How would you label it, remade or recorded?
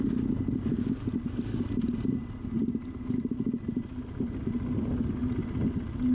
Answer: recorded